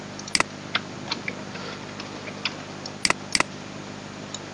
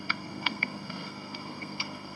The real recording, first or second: first